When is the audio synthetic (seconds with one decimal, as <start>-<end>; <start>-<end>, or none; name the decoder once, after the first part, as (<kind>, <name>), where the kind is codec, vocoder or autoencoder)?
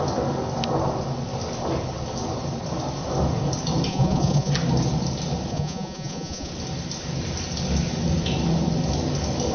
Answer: 3.9-4.5 (vocoder, Vocos); 5.5-6.5